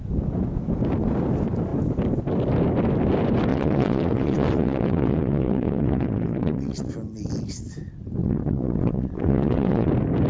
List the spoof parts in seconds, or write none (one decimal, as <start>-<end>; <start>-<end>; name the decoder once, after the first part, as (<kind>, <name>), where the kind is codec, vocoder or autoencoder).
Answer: 3.5-6.9 (vocoder, WaveNeXt); 8.2-9.9